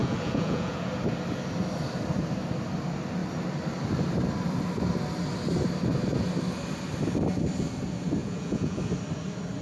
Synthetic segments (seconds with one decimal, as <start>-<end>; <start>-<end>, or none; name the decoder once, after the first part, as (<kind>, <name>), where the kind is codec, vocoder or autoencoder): 0.0-0.9 (vocoder, Vocos); 8.2-8.8